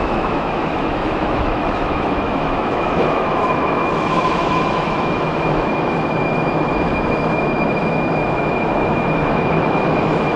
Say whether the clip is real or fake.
fake